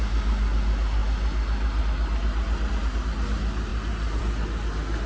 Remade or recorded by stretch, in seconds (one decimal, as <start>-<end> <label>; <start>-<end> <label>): 0.0-5.1 recorded